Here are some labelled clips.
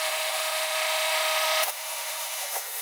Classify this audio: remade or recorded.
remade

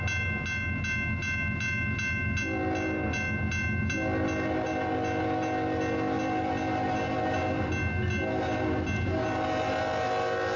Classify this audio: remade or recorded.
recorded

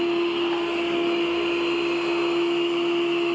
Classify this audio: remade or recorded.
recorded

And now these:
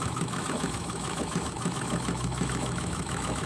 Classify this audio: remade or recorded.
remade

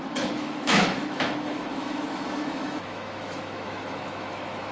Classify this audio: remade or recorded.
remade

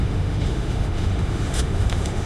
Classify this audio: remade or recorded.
remade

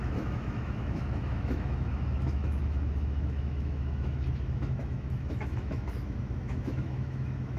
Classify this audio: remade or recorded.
remade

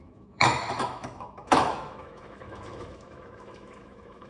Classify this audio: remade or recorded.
remade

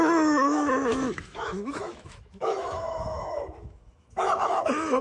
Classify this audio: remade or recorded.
remade